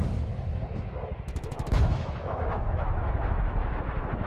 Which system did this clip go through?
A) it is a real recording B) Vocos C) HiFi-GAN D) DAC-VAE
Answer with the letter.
D